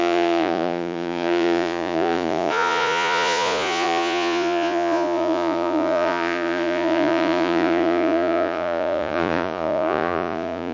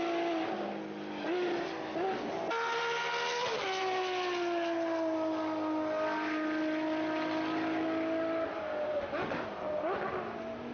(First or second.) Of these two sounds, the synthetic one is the first